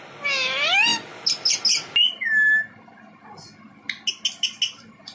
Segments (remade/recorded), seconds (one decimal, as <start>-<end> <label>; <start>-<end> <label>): 0.0-5.1 recorded